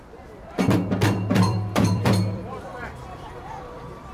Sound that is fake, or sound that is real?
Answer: fake